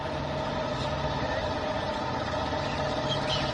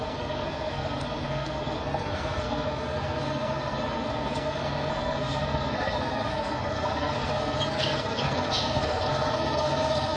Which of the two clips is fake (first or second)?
second